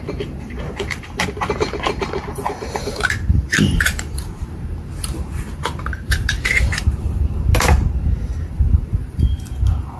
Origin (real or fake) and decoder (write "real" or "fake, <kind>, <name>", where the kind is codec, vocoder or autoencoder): fake, vocoder, BigVGAN v2